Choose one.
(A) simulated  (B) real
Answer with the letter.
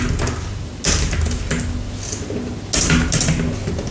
B